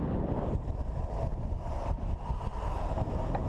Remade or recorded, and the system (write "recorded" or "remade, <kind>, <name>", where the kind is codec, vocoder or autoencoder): recorded